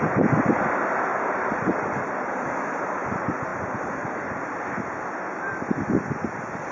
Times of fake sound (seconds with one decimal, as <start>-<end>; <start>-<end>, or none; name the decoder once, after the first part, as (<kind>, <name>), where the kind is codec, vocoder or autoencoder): 1.1-1.9 (vocoder, BigVGAN v2)